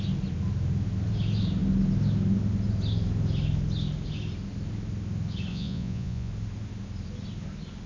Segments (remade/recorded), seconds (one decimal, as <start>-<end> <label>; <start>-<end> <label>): 0.0-5.5 recorded; 5.5-6.3 remade; 6.3-7.9 recorded